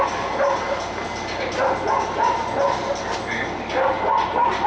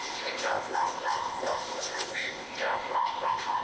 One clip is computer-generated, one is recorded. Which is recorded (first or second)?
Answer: first